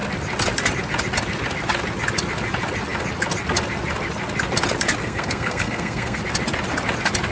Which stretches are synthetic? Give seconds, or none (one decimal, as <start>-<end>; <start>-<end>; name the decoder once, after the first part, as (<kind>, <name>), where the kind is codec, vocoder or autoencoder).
5.0-6.2 (codec, SNAC)